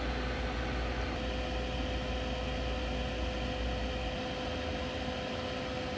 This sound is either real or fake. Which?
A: real